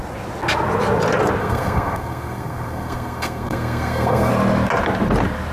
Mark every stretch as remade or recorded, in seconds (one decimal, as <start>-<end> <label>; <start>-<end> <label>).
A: 0.0-1.4 recorded; 1.4-4.3 remade; 4.3-5.5 recorded